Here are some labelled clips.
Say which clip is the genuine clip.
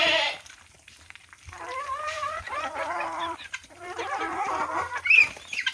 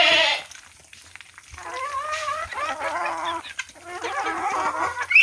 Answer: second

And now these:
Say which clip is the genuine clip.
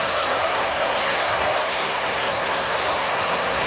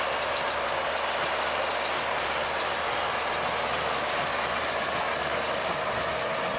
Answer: second